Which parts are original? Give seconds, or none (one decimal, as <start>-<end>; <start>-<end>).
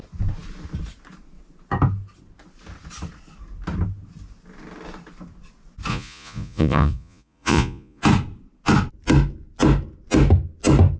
0.0-5.9; 8.0-11.0